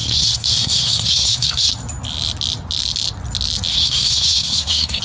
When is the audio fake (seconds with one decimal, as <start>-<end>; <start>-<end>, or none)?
0.0-1.7; 3.7-5.0